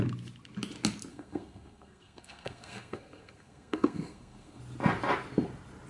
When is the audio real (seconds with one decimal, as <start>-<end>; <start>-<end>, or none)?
0.0-1.1; 4.6-5.9